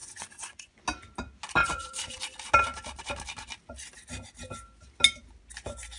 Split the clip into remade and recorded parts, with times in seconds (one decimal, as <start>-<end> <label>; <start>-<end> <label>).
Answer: 0.0-0.8 remade; 0.8-1.6 recorded; 1.6-2.2 remade; 2.2-6.0 recorded